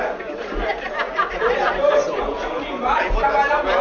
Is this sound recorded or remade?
remade